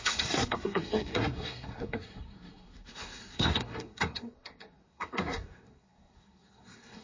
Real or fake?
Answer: fake